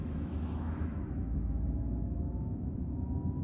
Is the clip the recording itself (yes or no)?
no